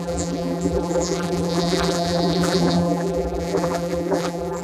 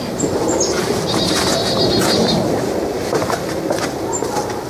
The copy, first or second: first